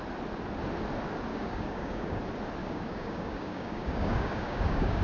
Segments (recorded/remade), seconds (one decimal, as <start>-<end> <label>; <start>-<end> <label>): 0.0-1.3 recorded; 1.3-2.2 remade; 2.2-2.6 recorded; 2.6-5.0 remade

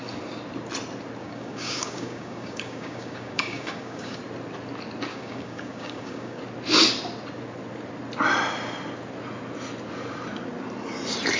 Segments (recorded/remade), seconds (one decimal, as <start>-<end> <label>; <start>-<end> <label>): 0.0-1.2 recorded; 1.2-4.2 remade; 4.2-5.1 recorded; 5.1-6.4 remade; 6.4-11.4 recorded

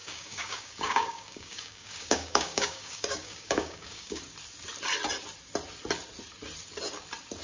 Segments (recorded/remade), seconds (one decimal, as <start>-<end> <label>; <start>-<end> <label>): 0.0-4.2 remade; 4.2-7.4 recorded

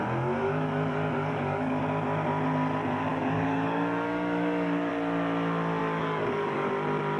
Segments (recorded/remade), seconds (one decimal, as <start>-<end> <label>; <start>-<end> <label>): 0.0-0.4 recorded; 0.4-1.8 remade; 1.8-3.1 recorded; 3.1-4.9 remade; 4.9-5.8 recorded; 5.8-6.7 remade; 6.7-7.2 recorded

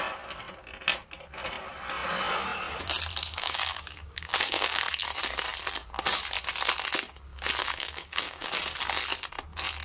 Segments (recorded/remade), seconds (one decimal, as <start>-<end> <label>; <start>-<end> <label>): 0.0-3.3 recorded; 3.3-4.8 remade; 4.8-7.6 recorded; 7.6-8.6 remade; 8.6-9.8 recorded

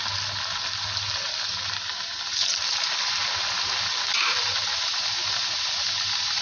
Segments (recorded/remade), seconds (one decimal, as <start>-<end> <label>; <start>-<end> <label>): 0.0-6.4 recorded

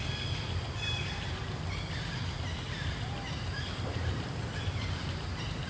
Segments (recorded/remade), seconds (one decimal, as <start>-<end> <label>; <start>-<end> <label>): 0.0-5.7 recorded

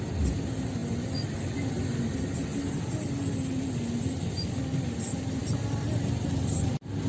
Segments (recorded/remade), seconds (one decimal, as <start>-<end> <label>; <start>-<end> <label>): 0.0-7.1 recorded